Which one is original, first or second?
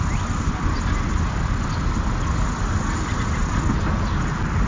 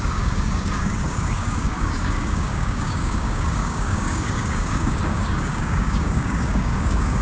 first